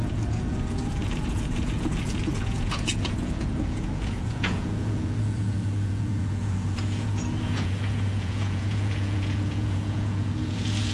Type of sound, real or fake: fake